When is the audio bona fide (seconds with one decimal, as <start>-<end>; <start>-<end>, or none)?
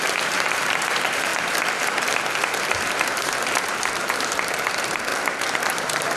5.1-5.6